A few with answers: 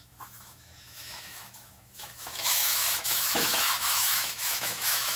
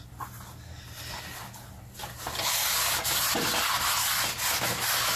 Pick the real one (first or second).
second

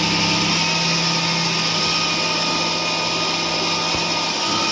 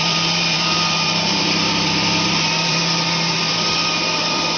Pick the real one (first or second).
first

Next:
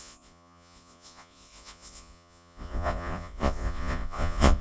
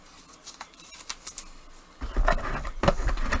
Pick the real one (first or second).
second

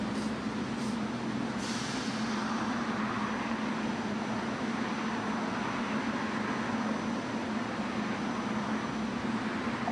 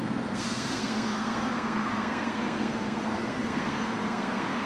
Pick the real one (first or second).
first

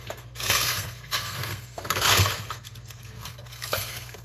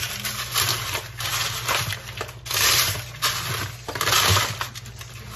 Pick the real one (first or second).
second